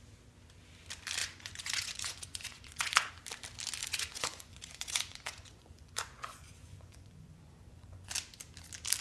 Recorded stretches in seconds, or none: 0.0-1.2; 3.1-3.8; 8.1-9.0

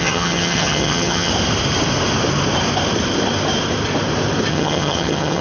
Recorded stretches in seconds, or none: 1.3-4.5

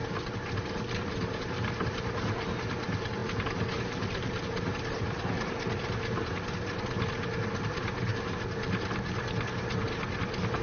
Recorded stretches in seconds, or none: 0.0-10.6

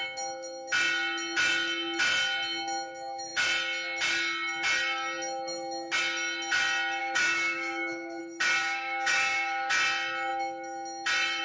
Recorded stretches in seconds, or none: 0.0-7.0; 8.2-8.6; 9.7-11.4

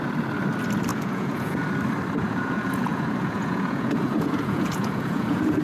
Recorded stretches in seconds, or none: 0.0-0.9; 1.6-2.2

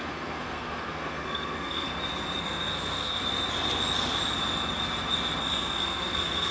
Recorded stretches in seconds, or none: 1.9-2.4; 3.2-5.4

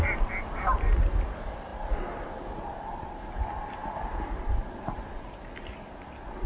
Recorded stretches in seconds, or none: 0.0-6.5

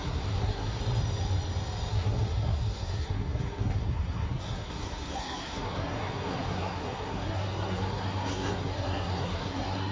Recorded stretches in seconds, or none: 0.8-1.9